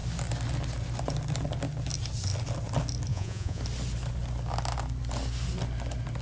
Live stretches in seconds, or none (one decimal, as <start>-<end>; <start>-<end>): 0.0-3.1; 3.6-6.2